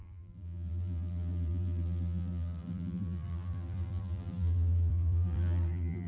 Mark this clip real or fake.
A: fake